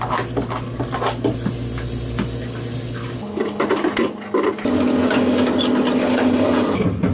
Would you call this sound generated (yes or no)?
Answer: no